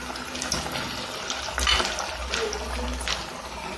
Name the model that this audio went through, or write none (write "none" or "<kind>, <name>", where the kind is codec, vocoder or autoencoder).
none